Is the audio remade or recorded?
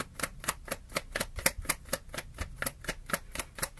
recorded